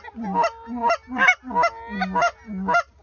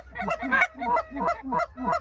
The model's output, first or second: second